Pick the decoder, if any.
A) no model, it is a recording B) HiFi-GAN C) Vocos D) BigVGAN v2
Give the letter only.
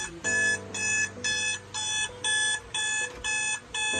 A